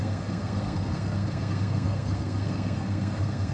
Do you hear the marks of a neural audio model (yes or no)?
yes